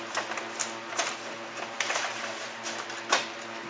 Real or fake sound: real